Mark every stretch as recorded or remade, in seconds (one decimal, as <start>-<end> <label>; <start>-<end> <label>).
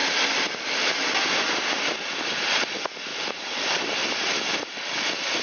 0.0-5.4 remade